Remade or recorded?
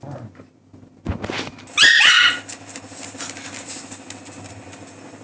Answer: recorded